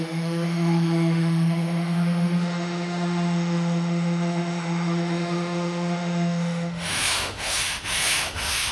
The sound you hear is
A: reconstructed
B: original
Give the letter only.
A